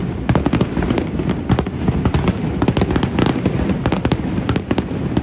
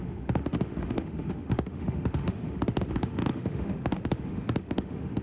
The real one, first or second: first